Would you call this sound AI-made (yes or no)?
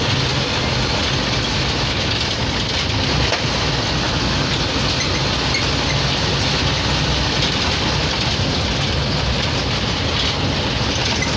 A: no